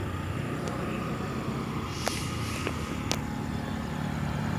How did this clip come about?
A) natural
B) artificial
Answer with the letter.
A